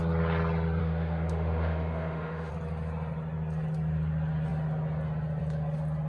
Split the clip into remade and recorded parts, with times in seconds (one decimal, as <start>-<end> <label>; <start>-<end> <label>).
0.0-0.8 recorded; 0.8-2.5 remade; 2.5-6.1 recorded